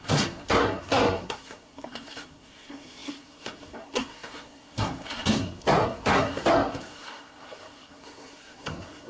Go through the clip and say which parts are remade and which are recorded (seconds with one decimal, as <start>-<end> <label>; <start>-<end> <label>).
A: 0.0-9.1 remade